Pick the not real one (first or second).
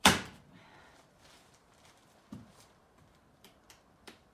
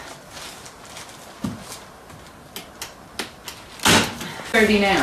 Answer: first